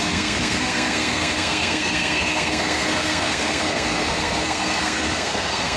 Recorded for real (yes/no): no